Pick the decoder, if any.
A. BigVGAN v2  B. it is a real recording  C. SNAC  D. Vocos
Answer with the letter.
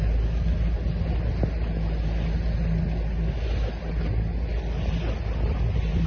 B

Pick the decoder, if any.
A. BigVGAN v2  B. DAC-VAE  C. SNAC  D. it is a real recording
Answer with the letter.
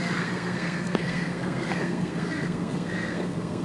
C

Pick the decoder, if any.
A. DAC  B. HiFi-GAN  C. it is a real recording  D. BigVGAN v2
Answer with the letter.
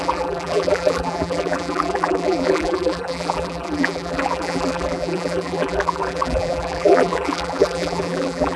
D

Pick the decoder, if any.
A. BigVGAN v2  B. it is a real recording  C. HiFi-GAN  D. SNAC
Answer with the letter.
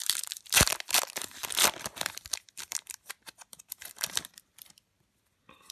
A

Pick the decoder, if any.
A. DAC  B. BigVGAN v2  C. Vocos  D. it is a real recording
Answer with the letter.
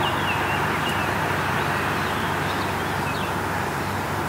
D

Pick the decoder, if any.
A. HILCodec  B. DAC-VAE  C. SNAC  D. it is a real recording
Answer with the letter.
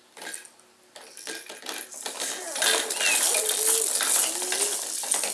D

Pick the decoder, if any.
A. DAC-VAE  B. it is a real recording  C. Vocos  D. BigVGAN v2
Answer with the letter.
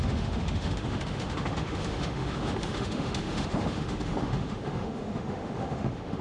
A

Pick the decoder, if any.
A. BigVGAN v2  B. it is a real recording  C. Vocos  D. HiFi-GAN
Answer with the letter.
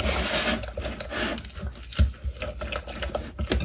B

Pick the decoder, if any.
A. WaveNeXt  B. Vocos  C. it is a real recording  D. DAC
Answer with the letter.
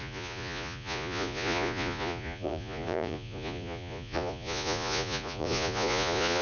B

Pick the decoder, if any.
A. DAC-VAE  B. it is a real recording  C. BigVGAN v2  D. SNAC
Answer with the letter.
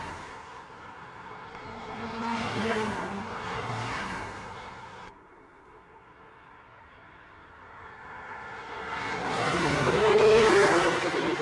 D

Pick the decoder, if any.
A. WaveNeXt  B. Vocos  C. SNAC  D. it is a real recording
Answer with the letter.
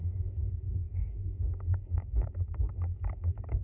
C